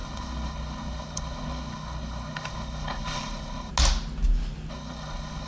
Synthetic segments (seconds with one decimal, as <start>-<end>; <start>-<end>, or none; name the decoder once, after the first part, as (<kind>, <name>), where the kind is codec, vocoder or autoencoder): 0.0-3.7 (codec, HILCodec); 4.7-5.5